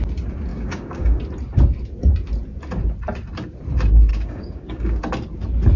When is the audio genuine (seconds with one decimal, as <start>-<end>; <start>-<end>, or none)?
0.0-0.5; 1.2-4.1; 5.0-5.8